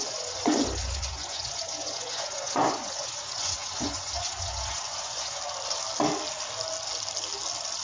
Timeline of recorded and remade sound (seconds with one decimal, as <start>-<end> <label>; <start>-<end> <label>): 0.0-5.4 remade; 5.4-7.8 recorded